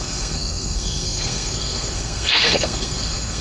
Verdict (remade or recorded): remade